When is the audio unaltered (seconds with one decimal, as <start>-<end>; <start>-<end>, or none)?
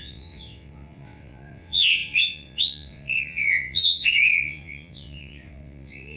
none